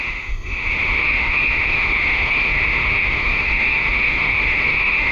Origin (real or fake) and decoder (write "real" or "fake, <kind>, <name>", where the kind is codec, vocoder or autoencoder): fake, autoencoder, DAC-VAE